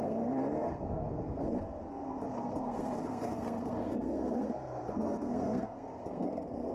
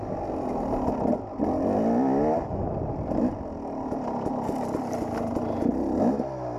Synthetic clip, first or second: first